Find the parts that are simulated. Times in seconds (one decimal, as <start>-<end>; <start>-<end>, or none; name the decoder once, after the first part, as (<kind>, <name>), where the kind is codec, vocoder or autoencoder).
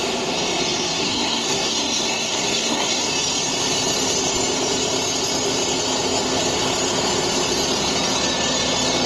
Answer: 1.0-3.1 (codec, SNAC)